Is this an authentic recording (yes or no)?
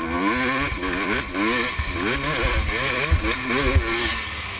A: yes